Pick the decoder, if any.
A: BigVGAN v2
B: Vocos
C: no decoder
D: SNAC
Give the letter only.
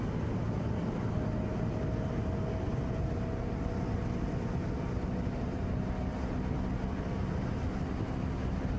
C